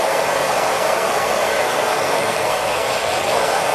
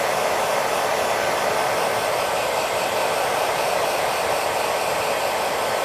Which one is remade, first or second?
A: first